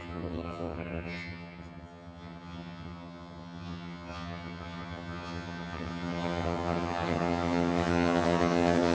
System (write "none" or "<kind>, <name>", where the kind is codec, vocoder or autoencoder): vocoder, HiFi-GAN